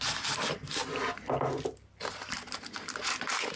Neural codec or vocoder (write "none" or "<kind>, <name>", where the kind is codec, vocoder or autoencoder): none